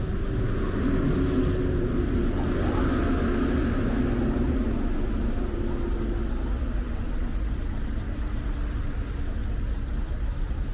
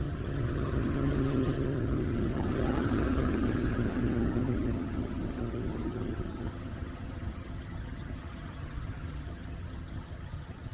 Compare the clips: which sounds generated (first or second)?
second